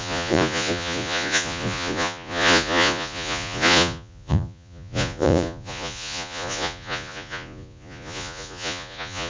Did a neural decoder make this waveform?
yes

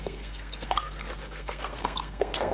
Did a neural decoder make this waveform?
yes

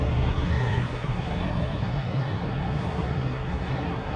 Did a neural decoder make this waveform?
yes